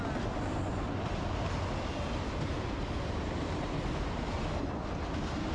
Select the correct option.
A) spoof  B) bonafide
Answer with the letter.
B